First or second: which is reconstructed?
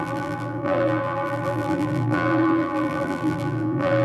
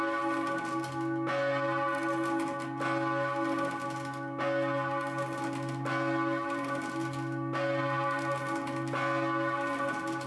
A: first